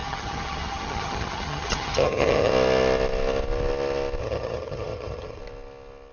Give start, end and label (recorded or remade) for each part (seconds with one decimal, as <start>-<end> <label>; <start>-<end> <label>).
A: 0.0-2.5 remade; 2.5-4.2 recorded; 4.2-5.4 remade; 5.4-6.1 recorded